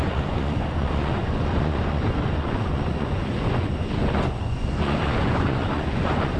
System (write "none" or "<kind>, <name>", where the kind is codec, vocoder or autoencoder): vocoder, Vocos